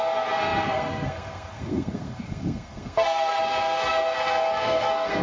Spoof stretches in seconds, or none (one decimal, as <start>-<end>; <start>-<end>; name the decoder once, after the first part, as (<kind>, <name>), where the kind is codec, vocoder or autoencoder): 0.0-5.2 (codec, SNAC)